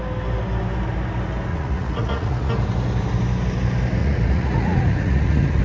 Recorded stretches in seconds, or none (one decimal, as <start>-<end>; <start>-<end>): 0.0-1.5; 2.5-4.0